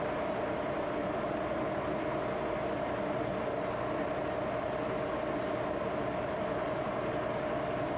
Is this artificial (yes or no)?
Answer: no